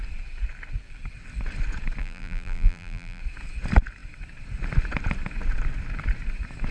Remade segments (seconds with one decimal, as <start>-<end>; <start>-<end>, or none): 2.0-3.2